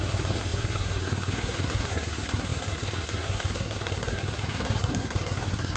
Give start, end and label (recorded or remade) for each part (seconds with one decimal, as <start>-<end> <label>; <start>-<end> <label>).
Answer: 0.0-5.8 remade